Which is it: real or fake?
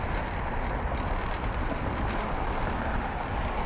real